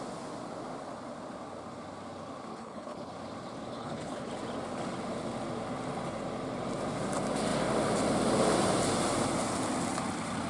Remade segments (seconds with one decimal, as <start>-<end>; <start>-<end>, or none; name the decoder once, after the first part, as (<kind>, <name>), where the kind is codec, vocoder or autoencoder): 2.5-3.1 (codec, HILCodec); 3.7-4.3